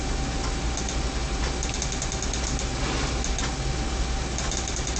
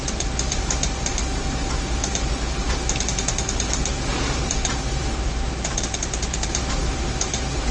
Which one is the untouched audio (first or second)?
first